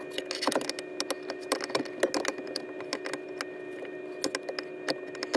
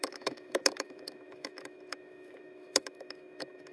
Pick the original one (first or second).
first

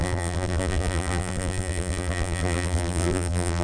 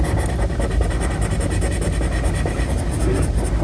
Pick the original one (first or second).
second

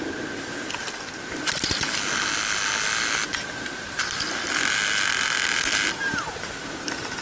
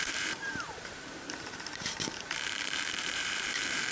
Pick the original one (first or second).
first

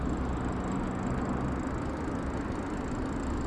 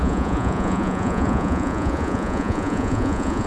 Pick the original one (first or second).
first